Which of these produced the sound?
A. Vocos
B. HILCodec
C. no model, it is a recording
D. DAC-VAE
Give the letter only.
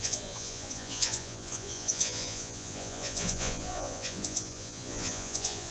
A